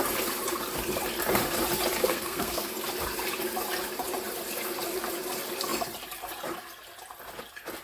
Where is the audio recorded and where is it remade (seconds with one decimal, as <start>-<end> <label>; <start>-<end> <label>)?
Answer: 0.0-2.0 recorded; 2.0-2.7 remade; 2.7-7.8 recorded